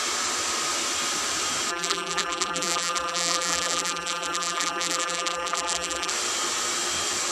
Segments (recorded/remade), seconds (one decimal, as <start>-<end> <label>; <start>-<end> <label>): 0.0-1.7 recorded; 1.7-6.1 remade; 6.1-7.3 recorded